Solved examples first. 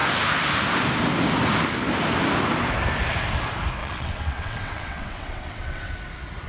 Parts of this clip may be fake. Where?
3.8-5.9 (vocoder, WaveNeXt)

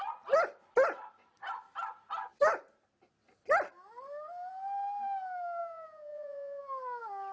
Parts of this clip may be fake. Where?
5.6-6.6 (vocoder, Vocos)

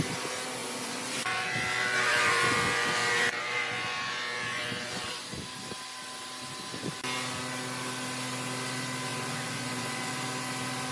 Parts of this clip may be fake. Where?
0.6-5.4 (vocoder, Vocos); 9.1-10.1